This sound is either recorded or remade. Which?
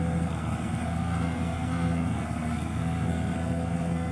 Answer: remade